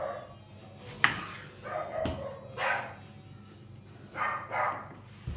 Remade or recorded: recorded